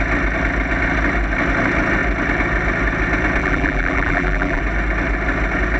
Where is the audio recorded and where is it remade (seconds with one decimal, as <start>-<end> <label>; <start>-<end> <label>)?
0.0-3.4 recorded; 3.4-4.6 remade; 4.6-5.8 recorded